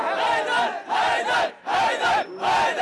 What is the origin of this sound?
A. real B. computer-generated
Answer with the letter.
A